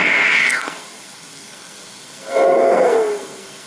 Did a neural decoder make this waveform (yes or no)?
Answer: yes